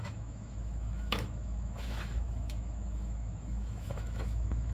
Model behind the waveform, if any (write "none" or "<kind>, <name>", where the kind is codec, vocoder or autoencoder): autoencoder, DAC-VAE